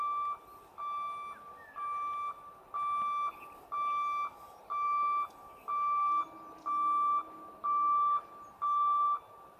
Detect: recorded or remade recorded